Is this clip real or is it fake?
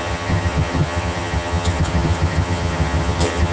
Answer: fake